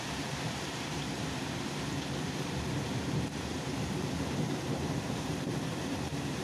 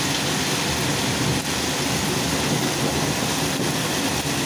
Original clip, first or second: second